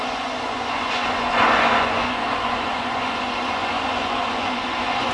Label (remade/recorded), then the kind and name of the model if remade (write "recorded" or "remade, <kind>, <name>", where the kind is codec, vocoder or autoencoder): remade, vocoder, Vocos